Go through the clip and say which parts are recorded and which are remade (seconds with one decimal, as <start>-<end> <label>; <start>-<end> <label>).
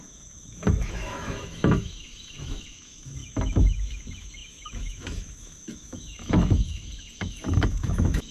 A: 0.0-8.3 remade